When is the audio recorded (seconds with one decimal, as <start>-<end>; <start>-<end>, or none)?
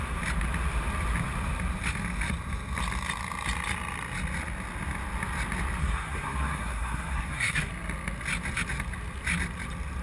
0.0-5.8; 7.7-10.0